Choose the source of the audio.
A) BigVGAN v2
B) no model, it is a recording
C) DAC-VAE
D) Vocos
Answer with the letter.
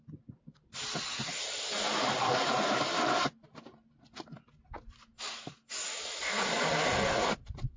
B